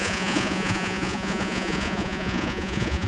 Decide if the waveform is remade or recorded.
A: remade